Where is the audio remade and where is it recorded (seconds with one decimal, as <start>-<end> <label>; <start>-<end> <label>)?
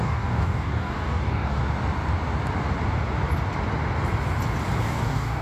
0.0-1.6 remade; 1.6-4.8 recorded; 4.8-5.4 remade